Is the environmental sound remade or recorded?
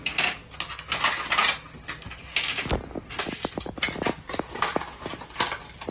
recorded